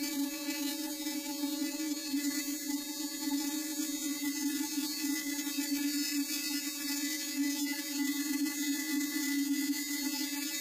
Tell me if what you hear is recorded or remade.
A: remade